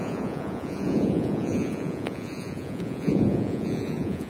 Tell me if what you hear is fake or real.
fake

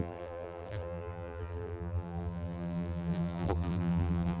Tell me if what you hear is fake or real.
fake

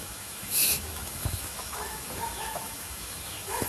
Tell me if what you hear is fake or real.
fake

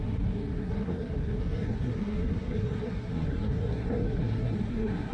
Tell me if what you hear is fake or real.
fake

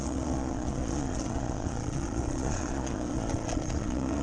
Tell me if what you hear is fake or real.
fake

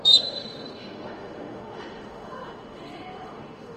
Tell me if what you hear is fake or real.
fake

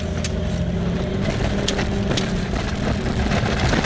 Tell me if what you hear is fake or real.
real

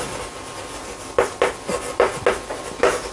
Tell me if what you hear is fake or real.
real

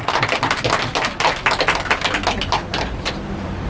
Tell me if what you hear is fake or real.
real